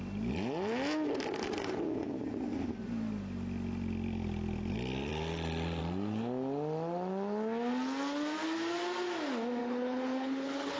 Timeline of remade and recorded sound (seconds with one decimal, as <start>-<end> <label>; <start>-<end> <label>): 0.0-9.6 recorded; 9.6-10.8 remade